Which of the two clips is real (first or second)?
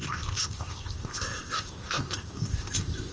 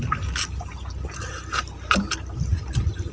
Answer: second